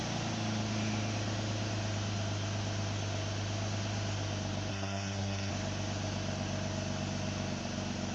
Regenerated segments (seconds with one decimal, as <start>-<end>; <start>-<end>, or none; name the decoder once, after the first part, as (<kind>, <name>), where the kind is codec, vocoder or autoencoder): 4.7-5.5 (codec, SNAC)